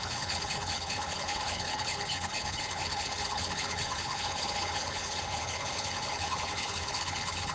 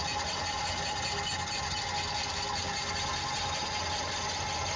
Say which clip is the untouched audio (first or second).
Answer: second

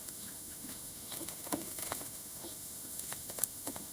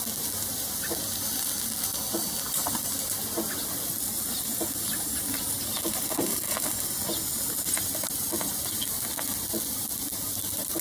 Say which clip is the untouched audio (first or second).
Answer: second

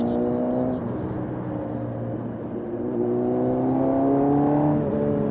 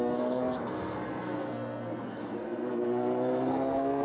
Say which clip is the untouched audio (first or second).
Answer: first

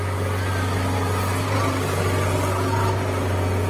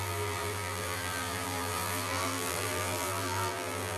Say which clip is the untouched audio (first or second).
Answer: first